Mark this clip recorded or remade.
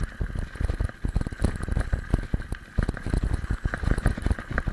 recorded